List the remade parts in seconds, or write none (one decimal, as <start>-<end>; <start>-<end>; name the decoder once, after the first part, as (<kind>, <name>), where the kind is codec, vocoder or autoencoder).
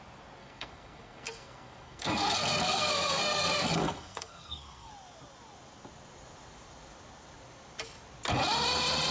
0.4-4.9 (codec, SNAC)